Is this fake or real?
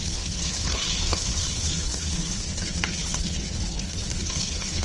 fake